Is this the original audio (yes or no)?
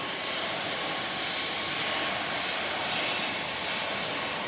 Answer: yes